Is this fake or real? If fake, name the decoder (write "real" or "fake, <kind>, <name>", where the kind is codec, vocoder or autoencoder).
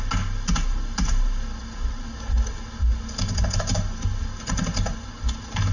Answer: real